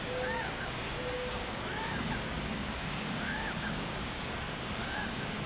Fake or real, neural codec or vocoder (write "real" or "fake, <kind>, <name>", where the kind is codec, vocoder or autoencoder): fake, codec, DAC